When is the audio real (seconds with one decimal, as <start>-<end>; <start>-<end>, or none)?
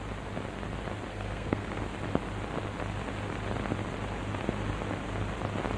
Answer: 0.0-1.1; 1.8-5.8